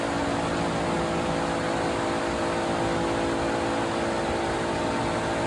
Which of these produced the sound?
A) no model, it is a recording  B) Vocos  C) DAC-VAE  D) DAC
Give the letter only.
A